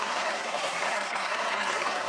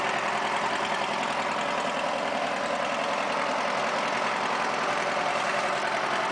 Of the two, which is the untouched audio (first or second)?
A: second